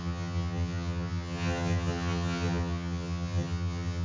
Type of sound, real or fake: fake